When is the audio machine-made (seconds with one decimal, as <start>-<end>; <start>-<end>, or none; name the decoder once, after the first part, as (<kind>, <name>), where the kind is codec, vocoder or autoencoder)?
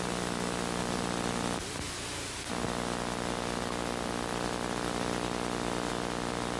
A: 0.8-1.7 (vocoder, BigVGAN v2); 4.3-5.9